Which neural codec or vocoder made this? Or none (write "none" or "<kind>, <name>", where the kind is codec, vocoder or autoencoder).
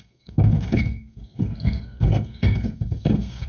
codec, SNAC